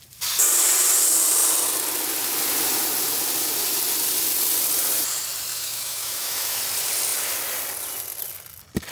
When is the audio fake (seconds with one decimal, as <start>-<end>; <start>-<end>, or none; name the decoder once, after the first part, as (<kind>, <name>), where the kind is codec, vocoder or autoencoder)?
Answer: 5.5-6.6 (autoencoder, DAC-VAE)